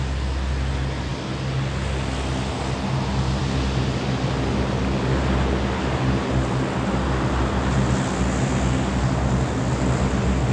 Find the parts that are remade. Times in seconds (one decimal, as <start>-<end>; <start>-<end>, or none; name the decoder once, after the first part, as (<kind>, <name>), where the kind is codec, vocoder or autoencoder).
none